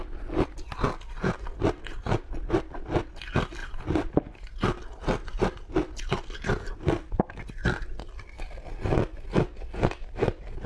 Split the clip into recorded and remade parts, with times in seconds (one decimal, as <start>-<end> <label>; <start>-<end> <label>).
0.0-3.6 recorded; 3.6-4.1 remade; 4.1-10.7 recorded